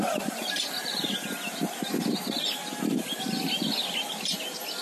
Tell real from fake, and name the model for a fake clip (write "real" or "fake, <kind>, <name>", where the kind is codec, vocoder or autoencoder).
real